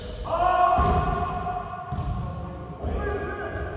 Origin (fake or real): real